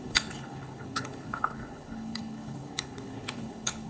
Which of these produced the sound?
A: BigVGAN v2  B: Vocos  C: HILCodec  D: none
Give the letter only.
C